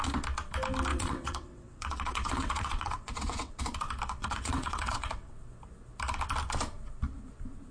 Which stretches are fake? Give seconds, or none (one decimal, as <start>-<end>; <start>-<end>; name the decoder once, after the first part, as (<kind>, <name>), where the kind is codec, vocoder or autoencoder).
0.9-3.6 (vocoder, WaveNeXt); 4.2-5.3